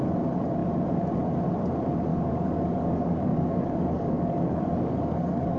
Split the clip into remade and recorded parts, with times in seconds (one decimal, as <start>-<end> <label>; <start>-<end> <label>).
0.0-2.1 recorded; 2.1-5.6 remade